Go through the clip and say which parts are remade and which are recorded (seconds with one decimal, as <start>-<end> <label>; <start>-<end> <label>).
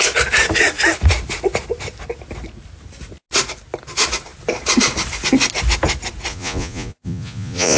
0.0-6.3 recorded; 6.3-7.8 remade